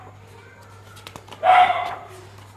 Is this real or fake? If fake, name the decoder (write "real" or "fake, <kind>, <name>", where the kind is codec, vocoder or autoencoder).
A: real